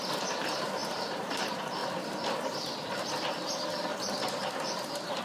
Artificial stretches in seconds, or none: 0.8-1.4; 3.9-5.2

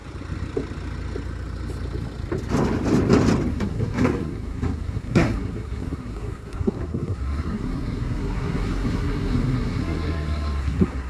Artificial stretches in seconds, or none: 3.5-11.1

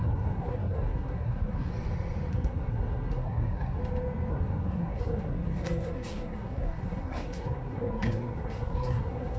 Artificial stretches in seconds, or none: 0.0-1.7; 2.3-3.8; 4.3-9.4

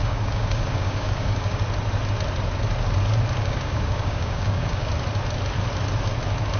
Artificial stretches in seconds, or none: 0.0-1.6; 3.4-4.9

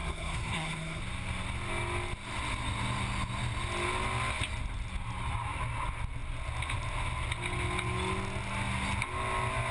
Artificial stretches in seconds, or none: 0.0-1.0